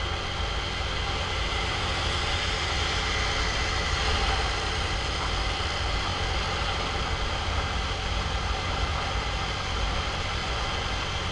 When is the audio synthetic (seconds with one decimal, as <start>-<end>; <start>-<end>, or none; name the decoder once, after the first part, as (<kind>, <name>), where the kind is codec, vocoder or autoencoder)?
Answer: 10.4-10.9 (vocoder, Vocos)